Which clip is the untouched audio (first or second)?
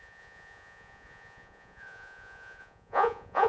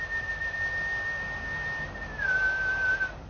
second